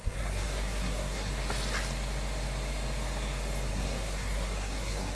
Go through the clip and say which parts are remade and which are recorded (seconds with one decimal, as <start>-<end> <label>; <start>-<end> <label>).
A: 0.0-1.3 remade; 1.3-3.7 recorded; 3.7-5.1 remade

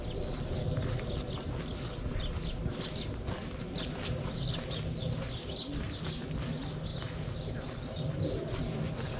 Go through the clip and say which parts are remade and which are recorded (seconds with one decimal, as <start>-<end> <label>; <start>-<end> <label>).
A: 0.0-9.2 recorded

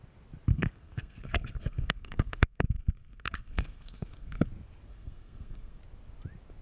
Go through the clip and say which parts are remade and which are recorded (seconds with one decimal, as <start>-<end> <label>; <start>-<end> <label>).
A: 0.0-0.5 recorded; 0.5-4.5 remade; 4.5-4.9 recorded; 4.9-5.8 remade; 5.8-6.6 recorded

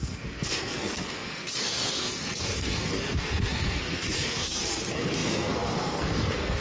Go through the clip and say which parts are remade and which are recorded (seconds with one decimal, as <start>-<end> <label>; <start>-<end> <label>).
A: 0.0-6.6 remade

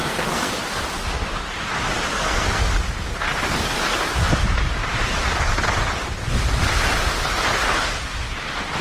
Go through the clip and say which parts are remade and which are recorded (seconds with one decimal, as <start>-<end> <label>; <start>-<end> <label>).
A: 0.0-0.5 remade; 0.5-2.1 recorded; 2.1-2.7 remade; 2.7-8.8 recorded